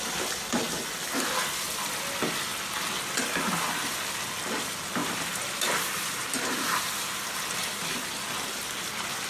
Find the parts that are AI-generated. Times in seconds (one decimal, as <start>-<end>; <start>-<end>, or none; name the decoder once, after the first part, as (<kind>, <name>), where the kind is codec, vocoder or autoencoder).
5.0-7.7 (vocoder, BigVGAN v2)